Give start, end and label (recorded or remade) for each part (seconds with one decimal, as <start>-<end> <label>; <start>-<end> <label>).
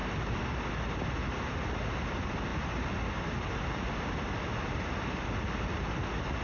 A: 0.0-6.4 recorded